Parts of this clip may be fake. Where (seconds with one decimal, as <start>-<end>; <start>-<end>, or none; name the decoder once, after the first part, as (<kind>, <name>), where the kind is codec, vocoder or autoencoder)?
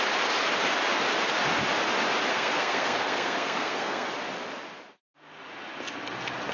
2.3-4.1 (codec, SNAC)